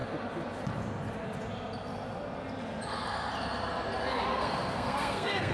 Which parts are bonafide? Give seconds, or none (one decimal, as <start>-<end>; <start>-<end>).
0.0-4.3

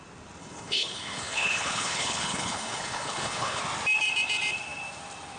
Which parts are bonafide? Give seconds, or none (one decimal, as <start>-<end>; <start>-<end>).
0.0-0.4; 3.6-5.4

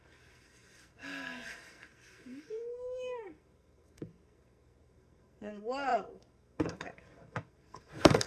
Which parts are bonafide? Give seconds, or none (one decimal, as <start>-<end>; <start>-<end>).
none

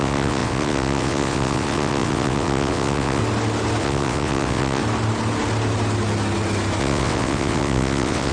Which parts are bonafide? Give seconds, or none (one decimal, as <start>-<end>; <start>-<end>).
3.2-3.8; 4.8-6.8

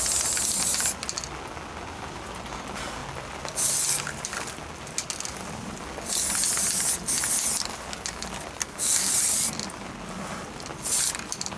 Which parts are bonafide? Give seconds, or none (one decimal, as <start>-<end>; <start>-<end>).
0.0-8.6; 9.1-11.6